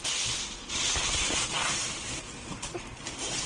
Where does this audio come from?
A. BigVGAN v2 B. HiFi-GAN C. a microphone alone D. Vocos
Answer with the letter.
C